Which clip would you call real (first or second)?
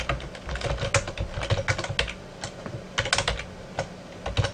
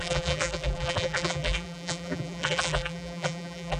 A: first